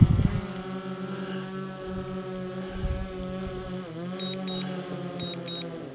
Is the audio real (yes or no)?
yes